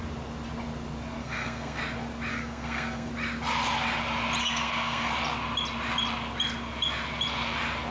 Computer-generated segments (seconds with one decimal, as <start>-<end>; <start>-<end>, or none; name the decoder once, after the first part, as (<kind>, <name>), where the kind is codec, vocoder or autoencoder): 1.2-1.8 (codec, SNAC); 2.3-3.1; 4.4-5.1